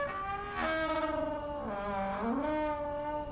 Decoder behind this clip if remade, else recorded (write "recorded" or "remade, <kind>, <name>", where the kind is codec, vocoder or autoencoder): recorded